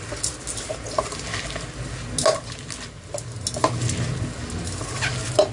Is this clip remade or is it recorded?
recorded